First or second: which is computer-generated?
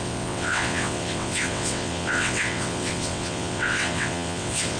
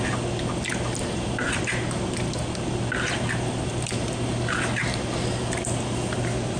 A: first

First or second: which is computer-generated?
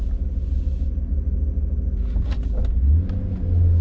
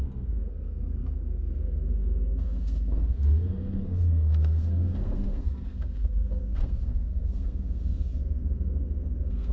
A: second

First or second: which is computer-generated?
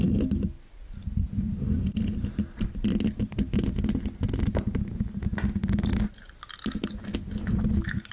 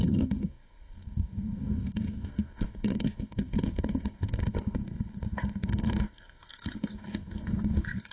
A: second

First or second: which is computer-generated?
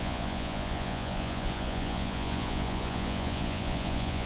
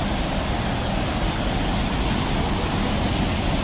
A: first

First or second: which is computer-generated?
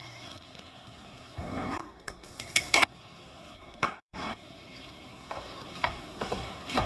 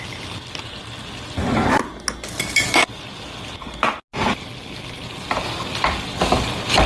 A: first